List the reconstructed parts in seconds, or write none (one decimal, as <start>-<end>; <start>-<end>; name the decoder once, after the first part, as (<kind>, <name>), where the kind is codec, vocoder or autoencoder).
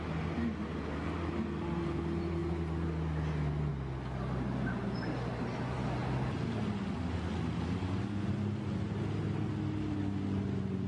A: none